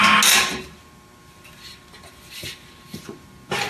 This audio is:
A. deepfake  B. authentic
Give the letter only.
B